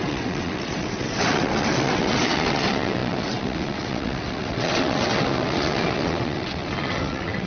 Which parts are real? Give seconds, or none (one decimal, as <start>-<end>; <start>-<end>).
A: none